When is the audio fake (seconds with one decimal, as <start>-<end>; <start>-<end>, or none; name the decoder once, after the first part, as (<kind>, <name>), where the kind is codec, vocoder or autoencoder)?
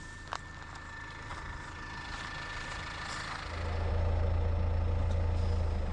none